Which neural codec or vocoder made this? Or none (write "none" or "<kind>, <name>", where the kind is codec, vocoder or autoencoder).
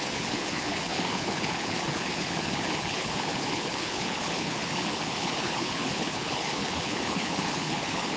codec, HILCodec